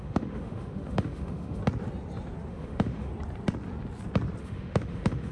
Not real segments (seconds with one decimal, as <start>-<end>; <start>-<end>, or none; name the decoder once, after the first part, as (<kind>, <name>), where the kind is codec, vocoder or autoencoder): 0.0-1.6 (autoencoder, DAC-VAE); 2.5-3.1; 4.4-5.3